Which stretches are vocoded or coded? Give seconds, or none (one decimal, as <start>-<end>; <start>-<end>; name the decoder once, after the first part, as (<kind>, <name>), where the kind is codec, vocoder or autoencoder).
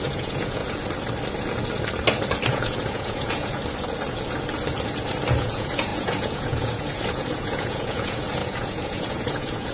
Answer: 0.0-0.6 (vocoder, Vocos); 2.5-3.6; 5.4-9.7